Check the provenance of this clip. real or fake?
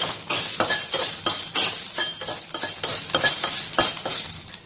real